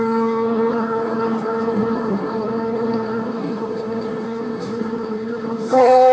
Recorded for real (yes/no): no